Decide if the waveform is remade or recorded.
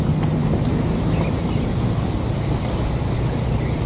recorded